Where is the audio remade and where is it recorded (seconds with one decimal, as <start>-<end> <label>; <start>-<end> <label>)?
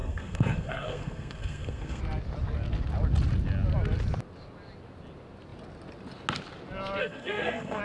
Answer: 0.0-2.0 remade; 2.0-7.0 recorded; 7.0-7.8 remade